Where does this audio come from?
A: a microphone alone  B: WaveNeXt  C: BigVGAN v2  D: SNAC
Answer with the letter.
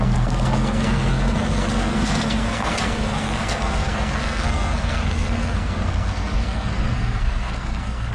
D